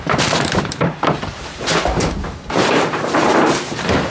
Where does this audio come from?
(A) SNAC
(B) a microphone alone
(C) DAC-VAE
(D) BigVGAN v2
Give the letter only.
D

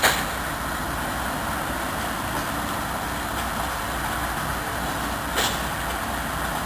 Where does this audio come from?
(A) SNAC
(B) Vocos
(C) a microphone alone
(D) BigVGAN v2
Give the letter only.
C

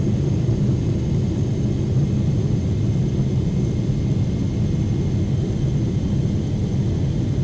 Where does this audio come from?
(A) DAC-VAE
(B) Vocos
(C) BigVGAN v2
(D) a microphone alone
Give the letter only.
D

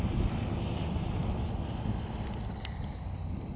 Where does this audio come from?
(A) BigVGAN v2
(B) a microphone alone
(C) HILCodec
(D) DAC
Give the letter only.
B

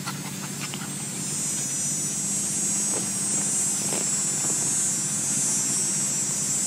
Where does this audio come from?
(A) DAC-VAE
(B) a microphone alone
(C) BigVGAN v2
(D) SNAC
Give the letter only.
B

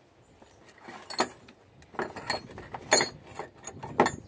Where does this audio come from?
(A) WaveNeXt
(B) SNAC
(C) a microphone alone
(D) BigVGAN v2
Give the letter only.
C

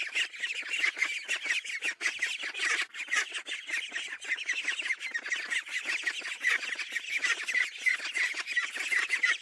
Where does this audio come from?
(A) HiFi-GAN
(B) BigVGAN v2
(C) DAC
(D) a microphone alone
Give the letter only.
D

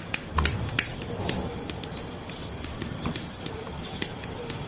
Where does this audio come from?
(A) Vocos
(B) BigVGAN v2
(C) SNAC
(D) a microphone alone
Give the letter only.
B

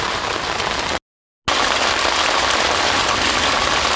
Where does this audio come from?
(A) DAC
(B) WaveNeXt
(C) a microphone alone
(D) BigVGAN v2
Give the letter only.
C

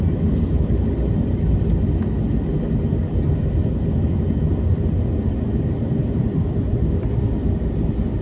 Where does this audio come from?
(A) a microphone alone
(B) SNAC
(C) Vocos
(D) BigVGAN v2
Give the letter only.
A